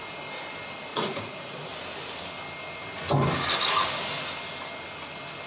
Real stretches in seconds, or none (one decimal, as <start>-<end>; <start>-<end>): 0.0-0.9; 1.7-5.5

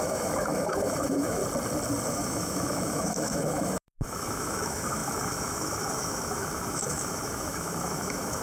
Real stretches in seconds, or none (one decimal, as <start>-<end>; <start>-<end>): 1.4-2.1

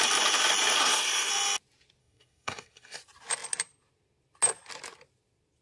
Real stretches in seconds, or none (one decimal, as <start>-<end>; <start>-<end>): 0.0-0.8; 1.3-2.0; 3.0-5.6

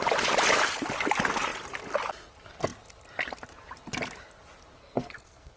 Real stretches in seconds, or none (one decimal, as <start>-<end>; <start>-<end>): 0.0-4.8

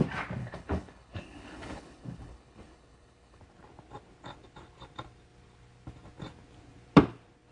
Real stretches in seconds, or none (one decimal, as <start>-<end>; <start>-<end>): 0.0-0.4; 3.4-7.5

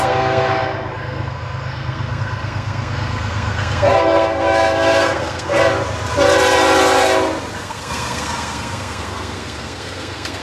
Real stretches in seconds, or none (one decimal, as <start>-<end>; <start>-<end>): 5.6-7.6

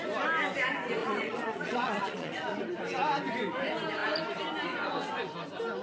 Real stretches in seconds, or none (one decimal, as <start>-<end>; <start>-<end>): 0.0-1.0; 2.6-5.8